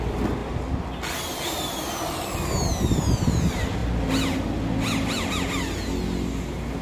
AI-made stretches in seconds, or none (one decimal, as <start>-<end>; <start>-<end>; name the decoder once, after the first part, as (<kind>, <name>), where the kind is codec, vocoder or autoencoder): none